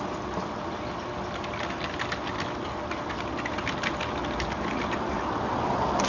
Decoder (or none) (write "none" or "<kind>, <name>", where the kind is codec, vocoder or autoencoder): none